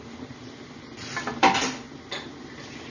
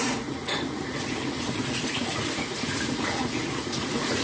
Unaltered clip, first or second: first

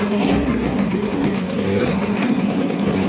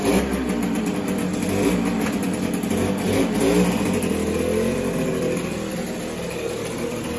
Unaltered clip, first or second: second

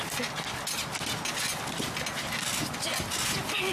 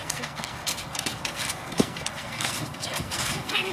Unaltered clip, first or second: first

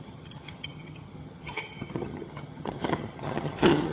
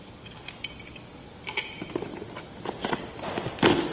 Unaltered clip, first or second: second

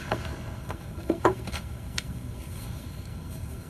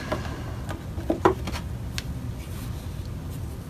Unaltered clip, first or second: second